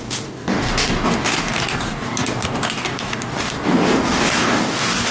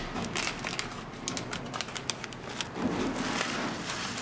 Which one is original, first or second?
second